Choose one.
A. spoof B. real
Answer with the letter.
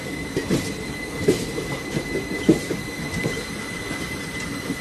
B